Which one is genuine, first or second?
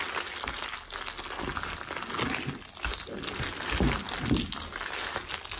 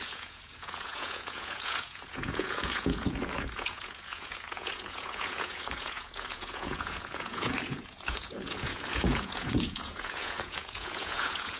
first